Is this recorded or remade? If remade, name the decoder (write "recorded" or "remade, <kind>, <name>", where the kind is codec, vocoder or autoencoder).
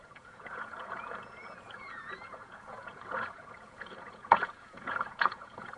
remade, vocoder, Vocos